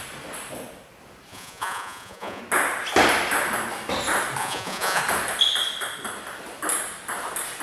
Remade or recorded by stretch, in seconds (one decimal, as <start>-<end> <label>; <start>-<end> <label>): 0.0-1.3 recorded; 1.3-2.4 remade; 2.4-4.4 recorded; 4.4-5.0 remade; 5.0-7.6 recorded